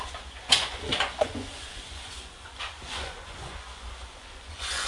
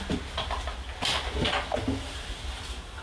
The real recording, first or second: second